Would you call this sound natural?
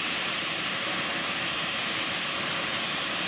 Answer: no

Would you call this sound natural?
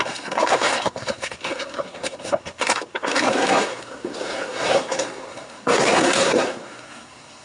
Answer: no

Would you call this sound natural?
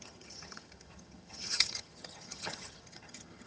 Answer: no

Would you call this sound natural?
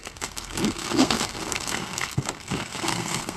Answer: no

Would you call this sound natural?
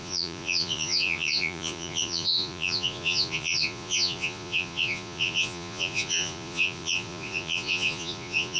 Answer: no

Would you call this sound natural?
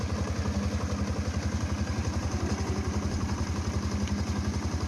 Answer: yes